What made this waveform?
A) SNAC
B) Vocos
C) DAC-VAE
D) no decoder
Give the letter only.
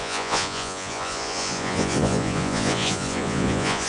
B